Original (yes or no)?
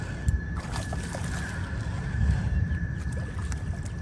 yes